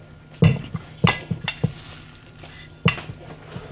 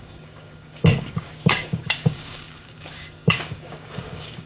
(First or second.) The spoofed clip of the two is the second